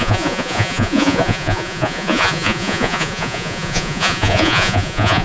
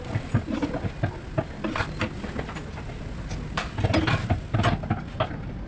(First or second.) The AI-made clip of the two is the first